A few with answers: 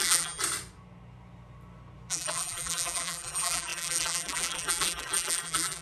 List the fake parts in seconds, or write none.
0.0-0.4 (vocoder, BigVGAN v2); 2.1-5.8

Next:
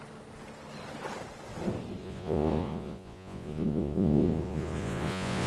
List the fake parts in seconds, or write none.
2.0-5.5 (vocoder, Vocos)

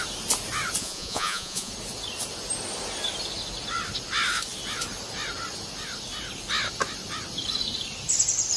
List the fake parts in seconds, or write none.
0.8-1.7 (vocoder, Vocos)

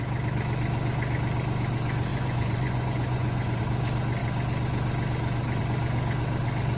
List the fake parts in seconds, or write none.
2.1-3.6 (vocoder, Vocos)